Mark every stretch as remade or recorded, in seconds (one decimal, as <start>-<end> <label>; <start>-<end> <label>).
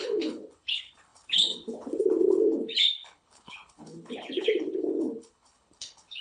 0.0-6.2 remade